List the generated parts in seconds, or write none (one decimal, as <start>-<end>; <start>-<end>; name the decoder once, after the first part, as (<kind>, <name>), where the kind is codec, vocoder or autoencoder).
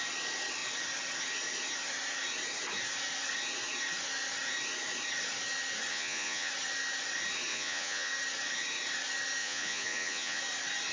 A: 5.9-6.5 (vocoder, Vocos); 7.5-8.1; 9.4-10.4